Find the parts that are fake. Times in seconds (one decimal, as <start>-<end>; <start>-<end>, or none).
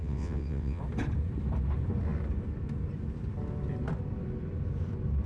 0.0-0.8